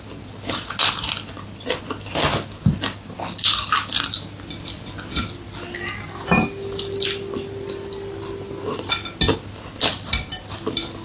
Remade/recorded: recorded